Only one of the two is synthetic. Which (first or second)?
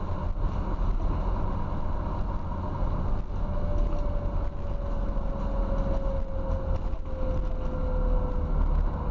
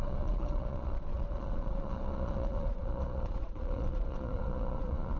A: second